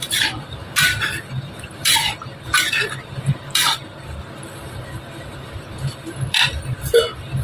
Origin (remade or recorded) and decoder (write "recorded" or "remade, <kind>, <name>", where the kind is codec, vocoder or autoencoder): remade, vocoder, BigVGAN v2